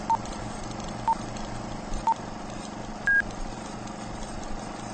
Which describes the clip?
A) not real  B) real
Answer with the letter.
B